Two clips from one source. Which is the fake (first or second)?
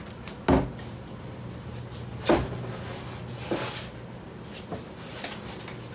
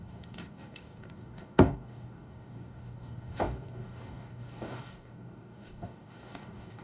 second